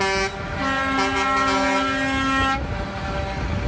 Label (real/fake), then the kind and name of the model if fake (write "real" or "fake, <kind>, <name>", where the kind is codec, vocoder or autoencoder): real